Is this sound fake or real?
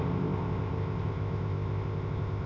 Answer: fake